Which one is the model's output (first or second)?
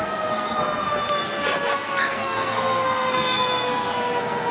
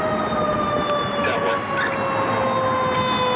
first